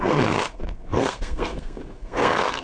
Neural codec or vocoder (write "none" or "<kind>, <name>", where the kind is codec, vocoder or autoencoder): codec, SNAC